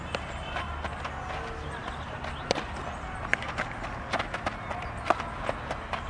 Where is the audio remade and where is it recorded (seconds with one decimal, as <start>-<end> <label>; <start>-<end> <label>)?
0.0-6.1 recorded